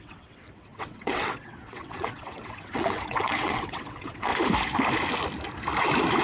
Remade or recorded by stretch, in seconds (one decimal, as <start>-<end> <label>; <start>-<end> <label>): 0.0-4.3 remade; 4.3-6.2 recorded